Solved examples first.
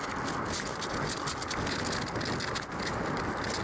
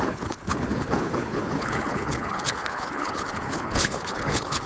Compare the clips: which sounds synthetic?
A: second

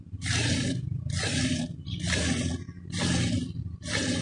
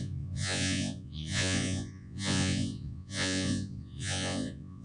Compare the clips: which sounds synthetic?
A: second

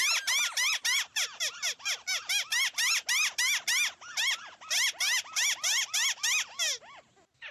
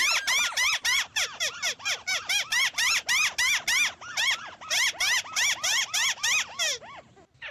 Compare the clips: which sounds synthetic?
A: second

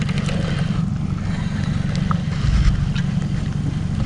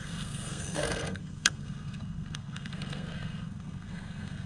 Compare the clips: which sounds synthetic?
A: second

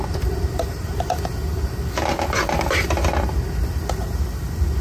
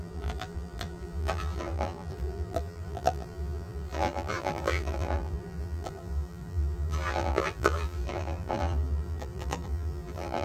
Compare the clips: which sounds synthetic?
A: second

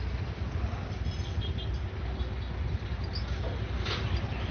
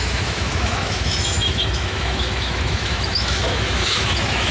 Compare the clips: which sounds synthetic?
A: second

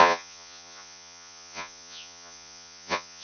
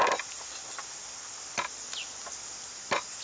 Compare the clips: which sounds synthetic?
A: first